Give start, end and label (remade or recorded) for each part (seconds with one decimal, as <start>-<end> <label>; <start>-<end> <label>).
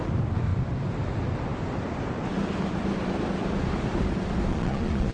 0.0-4.5 recorded; 4.5-5.1 remade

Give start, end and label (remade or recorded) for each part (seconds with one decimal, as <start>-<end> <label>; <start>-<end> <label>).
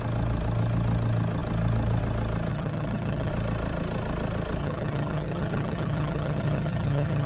0.0-2.5 recorded; 2.5-3.3 remade; 3.3-4.6 recorded; 4.6-7.3 remade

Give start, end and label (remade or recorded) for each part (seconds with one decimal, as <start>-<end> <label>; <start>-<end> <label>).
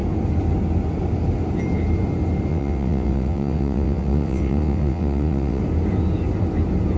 0.0-2.5 recorded; 2.5-5.6 remade; 5.6-7.0 recorded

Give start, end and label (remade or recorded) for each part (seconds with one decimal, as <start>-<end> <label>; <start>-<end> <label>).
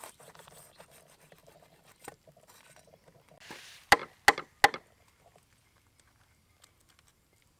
0.0-7.6 recorded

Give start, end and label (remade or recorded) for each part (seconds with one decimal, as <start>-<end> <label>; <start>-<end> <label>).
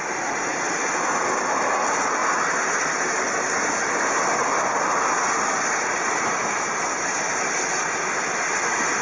0.0-9.0 recorded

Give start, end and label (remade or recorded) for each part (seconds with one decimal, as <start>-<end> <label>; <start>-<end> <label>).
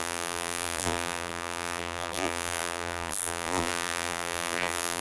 0.0-5.0 remade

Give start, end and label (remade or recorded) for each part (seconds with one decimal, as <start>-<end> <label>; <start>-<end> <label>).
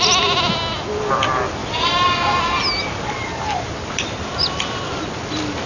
0.0-5.7 recorded